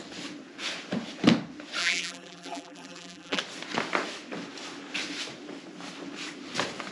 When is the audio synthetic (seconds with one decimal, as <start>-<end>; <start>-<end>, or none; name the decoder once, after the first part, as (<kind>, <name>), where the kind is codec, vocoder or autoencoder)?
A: 1.8-3.4 (vocoder, BigVGAN v2)